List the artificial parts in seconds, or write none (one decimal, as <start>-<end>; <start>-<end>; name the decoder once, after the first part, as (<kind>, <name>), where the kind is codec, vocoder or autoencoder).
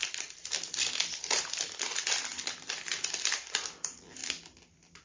0.0-4.2 (vocoder, BigVGAN v2)